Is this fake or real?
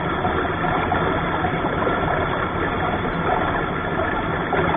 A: fake